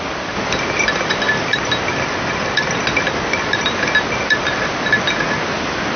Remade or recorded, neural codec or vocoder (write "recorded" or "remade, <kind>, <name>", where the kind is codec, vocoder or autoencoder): recorded